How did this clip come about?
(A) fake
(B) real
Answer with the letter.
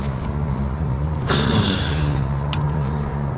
A